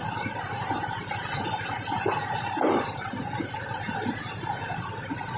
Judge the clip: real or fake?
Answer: fake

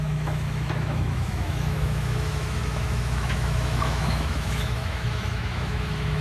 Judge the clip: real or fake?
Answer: fake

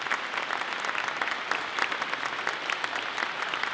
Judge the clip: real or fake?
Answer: real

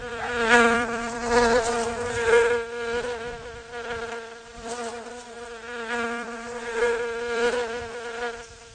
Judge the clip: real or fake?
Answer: fake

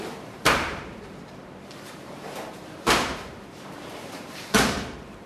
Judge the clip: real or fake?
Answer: fake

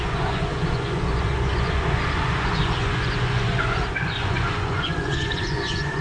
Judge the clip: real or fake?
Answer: fake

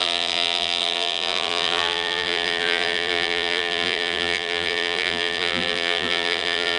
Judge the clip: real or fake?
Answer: fake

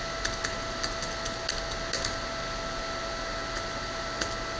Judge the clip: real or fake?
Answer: real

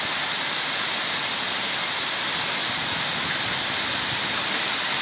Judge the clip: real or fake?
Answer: real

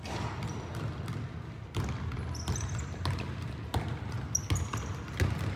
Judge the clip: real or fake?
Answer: real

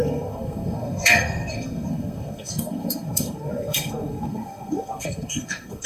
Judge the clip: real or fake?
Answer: fake